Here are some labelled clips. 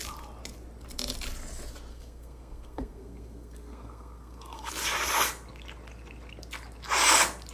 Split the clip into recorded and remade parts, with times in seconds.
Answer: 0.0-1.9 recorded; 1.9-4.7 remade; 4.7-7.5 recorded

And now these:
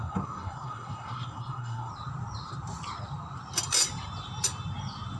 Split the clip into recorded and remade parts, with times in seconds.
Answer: 0.0-1.9 remade; 1.9-5.2 recorded

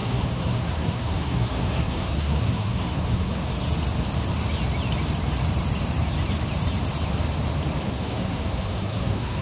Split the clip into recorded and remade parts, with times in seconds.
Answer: 0.0-3.4 remade; 3.4-7.9 recorded; 7.9-9.4 remade

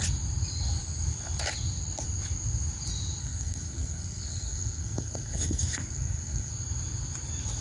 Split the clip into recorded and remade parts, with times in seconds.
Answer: 0.0-3.2 recorded; 3.2-6.5 remade; 6.5-7.6 recorded

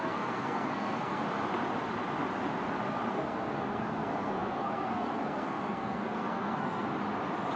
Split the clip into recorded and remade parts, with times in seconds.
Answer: 0.0-1.2 remade; 1.2-3.1 recorded; 3.1-6.9 remade; 6.9-7.6 recorded

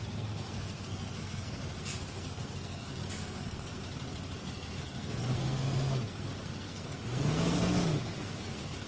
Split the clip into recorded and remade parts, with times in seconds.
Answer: 0.0-3.8 remade; 3.8-4.4 recorded; 4.4-8.9 remade

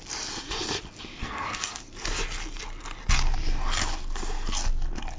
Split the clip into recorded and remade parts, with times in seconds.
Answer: 0.0-1.2 recorded; 1.2-1.8 remade; 1.8-5.2 recorded

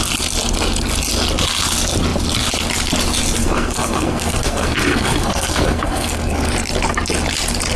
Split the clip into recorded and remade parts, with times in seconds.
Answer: 0.0-3.4 recorded; 3.4-6.5 remade; 6.5-7.8 recorded